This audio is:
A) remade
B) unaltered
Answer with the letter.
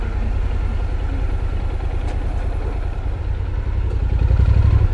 B